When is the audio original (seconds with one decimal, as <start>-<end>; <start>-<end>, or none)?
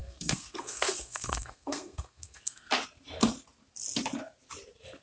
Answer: 2.7-5.0